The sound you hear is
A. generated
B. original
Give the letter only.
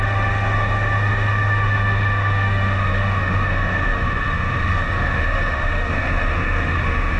A